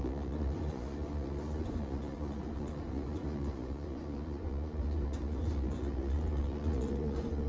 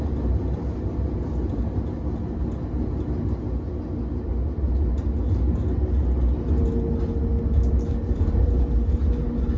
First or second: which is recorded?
second